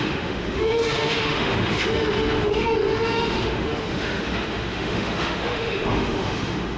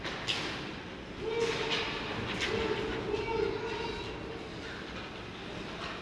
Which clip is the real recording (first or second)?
second